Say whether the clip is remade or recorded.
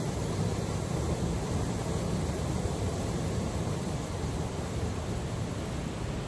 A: recorded